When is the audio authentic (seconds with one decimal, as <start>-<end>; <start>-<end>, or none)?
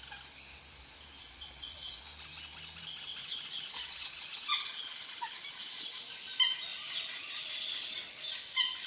0.0-1.2; 2.0-3.2; 6.0-6.7; 7.8-8.9